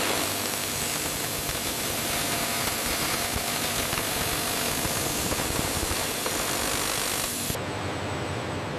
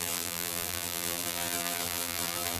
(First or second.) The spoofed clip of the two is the second